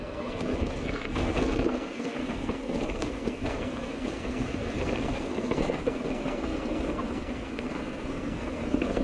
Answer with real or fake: fake